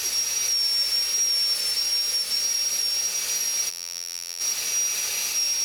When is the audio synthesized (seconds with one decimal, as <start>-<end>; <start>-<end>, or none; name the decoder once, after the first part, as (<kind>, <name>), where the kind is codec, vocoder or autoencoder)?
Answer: 3.7-4.4 (vocoder, BigVGAN v2)